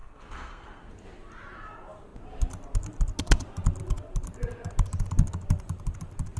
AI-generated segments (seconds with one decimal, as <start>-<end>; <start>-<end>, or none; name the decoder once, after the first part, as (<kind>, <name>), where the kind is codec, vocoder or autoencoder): 0.0-0.9 (codec, SNAC)

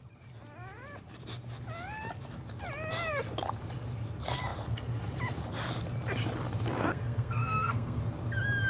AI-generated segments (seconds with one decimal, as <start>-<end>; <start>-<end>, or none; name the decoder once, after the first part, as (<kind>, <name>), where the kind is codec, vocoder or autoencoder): 6.9-8.0 (codec, SNAC)

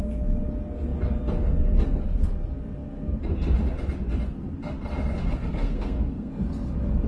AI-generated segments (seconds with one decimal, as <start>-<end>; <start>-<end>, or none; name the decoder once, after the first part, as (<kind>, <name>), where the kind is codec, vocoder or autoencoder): 5.2-6.3 (codec, SNAC)

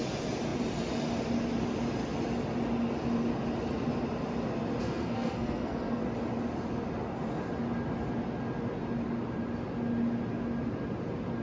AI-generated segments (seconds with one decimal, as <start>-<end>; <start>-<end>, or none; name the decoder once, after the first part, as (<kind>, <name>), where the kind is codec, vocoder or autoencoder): 4.8-6.0 (codec, SNAC)

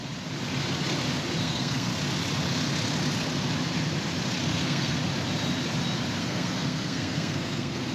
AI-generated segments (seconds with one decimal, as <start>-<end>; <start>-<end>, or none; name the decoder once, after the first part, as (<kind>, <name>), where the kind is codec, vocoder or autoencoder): 1.4-1.9 (codec, SNAC); 4.5-5.0; 6.2-7.9

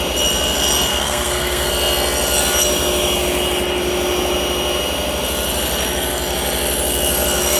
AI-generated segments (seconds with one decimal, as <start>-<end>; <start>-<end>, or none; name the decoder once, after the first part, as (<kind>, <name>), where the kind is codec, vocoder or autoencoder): 0.9-1.7 (codec, SNAC)

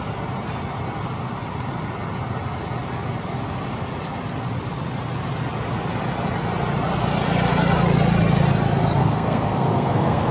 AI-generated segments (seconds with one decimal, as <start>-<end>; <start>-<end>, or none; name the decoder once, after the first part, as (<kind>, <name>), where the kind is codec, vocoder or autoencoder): 9.0-10.3 (codec, SNAC)

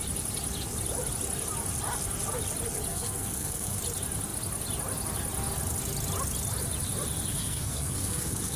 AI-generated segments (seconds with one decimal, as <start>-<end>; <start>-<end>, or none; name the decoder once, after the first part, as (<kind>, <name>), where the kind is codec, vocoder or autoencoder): 2.9-3.8 (codec, SNAC); 7.3-8.6